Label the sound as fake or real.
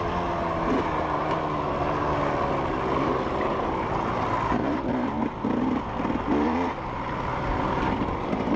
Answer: real